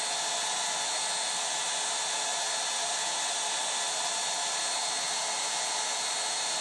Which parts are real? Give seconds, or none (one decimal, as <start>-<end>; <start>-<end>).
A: 0.0-6.6